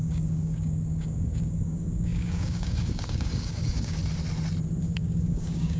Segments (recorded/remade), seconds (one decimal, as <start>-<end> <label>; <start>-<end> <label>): 0.0-4.0 remade; 4.0-4.8 recorded; 4.8-5.8 remade

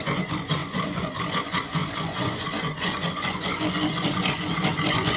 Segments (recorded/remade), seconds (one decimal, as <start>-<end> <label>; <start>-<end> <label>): 0.0-5.2 remade

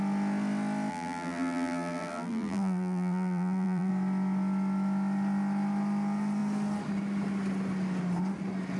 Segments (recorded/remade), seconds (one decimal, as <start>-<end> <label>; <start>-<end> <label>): 0.0-0.9 recorded; 0.9-3.9 remade; 3.9-8.8 recorded

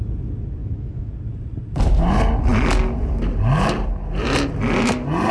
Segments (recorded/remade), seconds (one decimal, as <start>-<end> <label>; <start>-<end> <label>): 0.0-0.6 recorded; 0.6-1.1 remade; 1.1-5.3 recorded

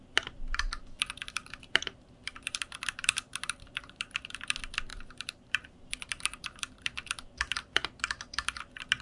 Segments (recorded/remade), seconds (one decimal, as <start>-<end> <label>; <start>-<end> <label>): 0.0-1.4 recorded; 1.4-4.4 remade; 4.4-4.9 recorded; 4.9-5.5 remade; 5.5-9.0 recorded